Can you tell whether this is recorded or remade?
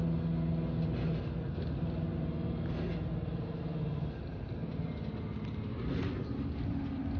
recorded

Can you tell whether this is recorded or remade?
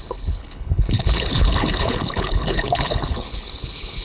remade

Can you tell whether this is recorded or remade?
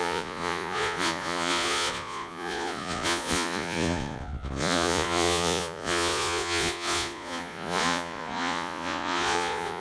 remade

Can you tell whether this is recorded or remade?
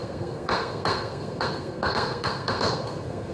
remade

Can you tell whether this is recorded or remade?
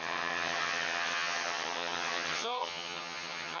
remade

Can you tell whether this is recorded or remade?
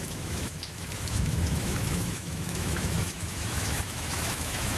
remade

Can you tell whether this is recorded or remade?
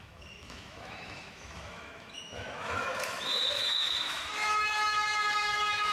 remade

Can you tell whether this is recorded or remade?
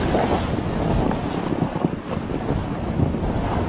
recorded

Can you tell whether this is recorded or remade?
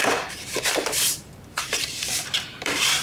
remade